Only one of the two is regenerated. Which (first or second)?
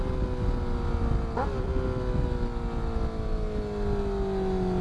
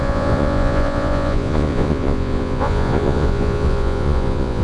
second